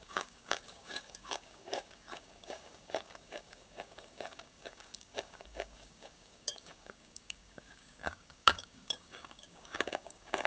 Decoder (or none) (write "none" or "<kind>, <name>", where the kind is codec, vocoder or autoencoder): codec, DAC